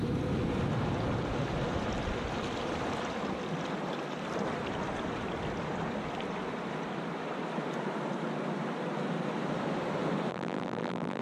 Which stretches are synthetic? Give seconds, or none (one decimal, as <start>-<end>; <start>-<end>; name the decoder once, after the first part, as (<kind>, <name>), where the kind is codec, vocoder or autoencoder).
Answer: 10.3-11.2 (vocoder, BigVGAN v2)